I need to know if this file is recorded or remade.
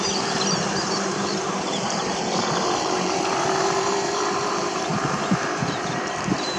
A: remade